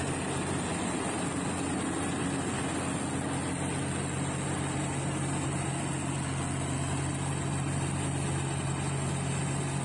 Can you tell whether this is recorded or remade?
recorded